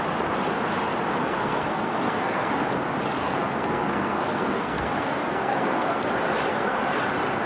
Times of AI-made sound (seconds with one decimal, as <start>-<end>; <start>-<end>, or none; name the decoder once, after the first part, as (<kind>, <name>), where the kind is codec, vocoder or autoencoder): 1.2-2.5 (codec, SNAC); 3.2-6.1; 6.5-7.0